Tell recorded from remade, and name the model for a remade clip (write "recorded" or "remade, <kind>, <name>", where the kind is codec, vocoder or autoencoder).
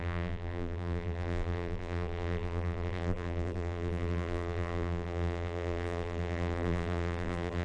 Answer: remade, vocoder, BigVGAN v2